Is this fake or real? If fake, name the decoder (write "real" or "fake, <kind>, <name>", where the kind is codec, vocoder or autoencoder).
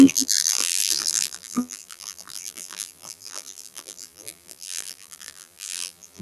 fake, vocoder, BigVGAN v2